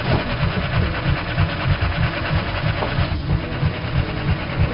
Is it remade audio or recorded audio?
remade